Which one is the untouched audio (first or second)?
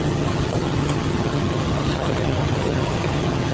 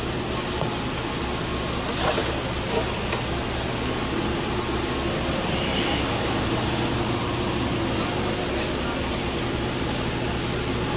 second